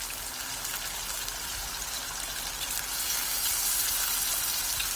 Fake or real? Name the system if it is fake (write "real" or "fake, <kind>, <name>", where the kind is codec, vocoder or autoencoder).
real